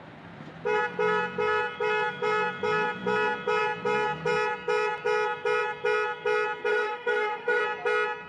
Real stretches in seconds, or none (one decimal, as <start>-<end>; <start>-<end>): 0.0-6.7; 7.6-8.3